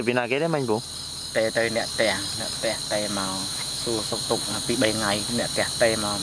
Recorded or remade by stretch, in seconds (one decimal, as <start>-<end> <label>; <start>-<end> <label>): 0.0-3.4 recorded; 3.4-4.3 remade; 4.3-6.2 recorded